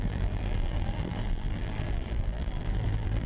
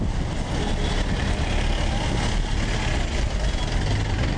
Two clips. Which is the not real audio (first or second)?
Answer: first